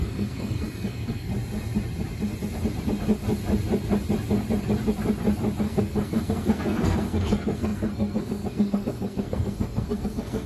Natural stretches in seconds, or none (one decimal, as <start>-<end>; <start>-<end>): 1.3-5.6